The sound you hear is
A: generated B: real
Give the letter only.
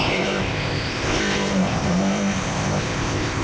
A